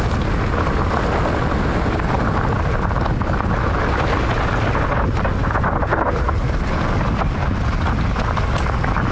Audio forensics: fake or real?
real